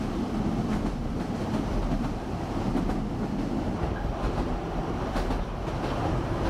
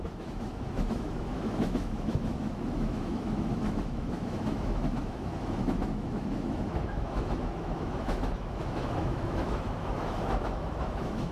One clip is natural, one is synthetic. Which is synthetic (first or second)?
second